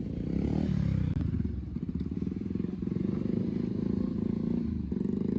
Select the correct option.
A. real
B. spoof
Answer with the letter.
B